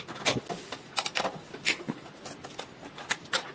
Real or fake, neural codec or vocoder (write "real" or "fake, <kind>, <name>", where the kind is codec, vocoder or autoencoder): real